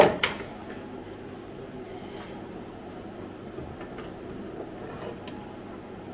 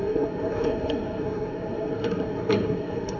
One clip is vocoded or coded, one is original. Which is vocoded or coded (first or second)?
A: second